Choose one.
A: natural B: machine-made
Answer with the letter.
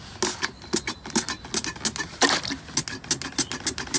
A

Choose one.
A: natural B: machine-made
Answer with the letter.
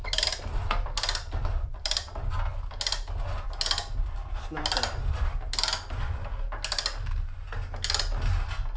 A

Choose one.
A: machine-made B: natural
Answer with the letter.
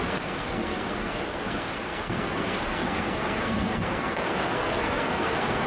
A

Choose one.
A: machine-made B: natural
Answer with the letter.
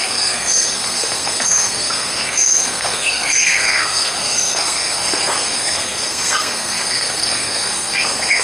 A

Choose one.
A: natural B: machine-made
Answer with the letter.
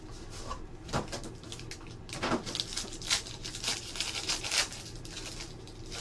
A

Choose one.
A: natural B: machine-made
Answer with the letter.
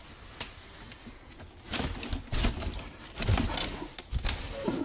A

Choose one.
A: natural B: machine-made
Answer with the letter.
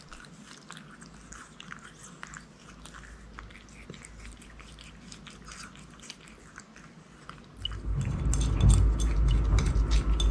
A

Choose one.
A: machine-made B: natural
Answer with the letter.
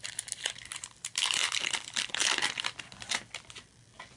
A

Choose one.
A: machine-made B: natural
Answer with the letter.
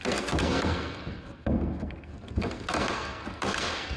A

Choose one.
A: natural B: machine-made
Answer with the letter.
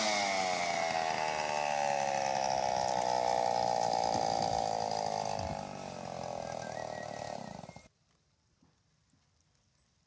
A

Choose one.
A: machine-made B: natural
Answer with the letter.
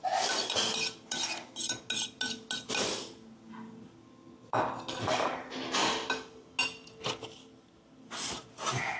B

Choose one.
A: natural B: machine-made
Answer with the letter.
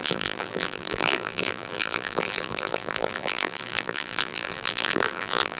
B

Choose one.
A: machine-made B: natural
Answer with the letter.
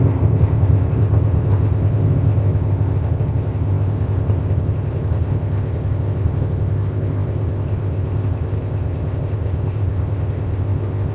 A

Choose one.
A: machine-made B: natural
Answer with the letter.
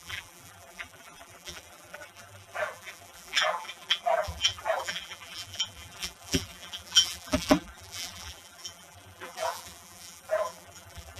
A